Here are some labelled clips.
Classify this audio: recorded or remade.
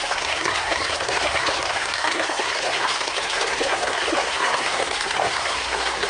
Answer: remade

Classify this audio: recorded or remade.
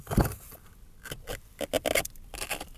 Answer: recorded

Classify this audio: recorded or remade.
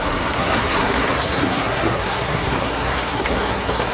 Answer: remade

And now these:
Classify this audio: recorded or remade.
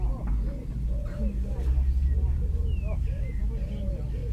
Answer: recorded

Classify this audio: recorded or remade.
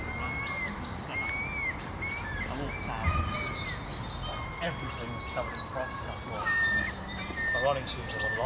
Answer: recorded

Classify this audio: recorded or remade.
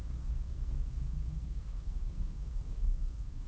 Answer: remade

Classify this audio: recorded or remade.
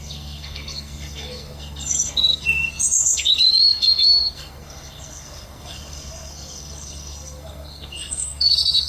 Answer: remade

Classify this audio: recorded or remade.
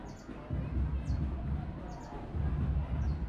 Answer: recorded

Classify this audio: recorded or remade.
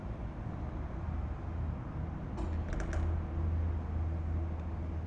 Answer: recorded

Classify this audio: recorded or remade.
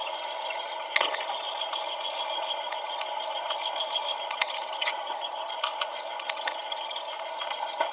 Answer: recorded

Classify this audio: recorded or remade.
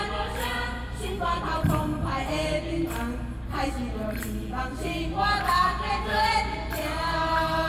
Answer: recorded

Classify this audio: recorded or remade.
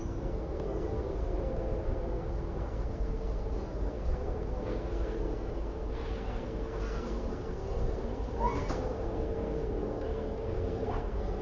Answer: remade